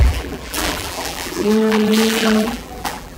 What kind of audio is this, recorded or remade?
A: remade